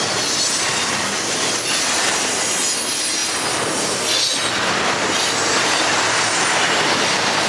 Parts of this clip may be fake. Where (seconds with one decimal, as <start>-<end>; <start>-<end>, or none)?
none